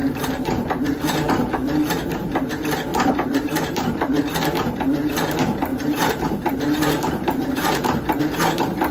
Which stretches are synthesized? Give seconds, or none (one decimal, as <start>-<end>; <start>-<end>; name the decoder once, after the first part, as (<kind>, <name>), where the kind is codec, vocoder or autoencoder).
0.0-0.7 (vocoder, BigVGAN v2); 2.9-4.2; 5.7-8.2